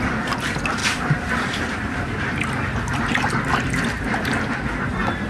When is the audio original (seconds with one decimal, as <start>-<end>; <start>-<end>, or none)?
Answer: 0.0-0.8; 3.0-5.3